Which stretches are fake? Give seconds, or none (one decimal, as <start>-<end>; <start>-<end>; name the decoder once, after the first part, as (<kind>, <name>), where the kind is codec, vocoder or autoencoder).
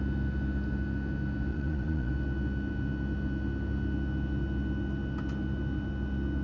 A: 1.5-2.1 (vocoder, Vocos)